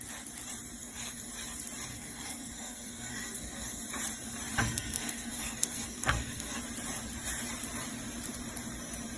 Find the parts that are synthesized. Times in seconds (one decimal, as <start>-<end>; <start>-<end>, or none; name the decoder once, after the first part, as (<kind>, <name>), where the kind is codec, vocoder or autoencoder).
0.8-1.3 (codec, SNAC); 1.9-3.8; 4.6-6.6